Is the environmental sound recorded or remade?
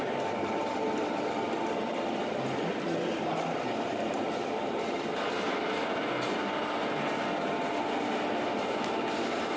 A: recorded